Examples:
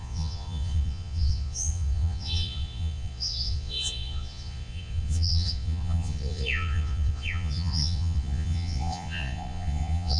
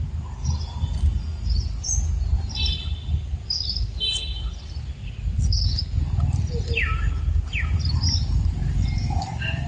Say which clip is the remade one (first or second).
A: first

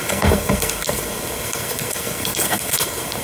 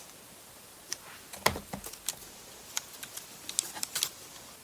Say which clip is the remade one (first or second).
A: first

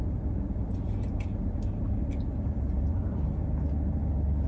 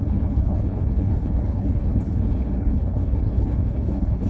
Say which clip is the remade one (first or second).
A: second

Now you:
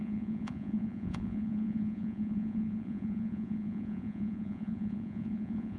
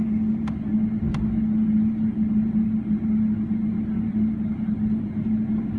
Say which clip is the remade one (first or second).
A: first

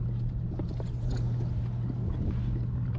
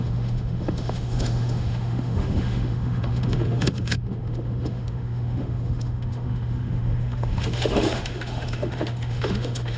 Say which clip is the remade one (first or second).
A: second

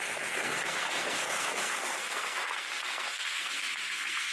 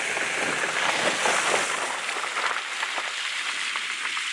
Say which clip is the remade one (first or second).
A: first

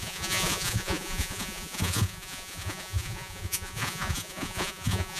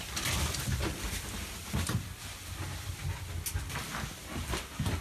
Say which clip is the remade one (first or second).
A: first